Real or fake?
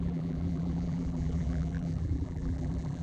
fake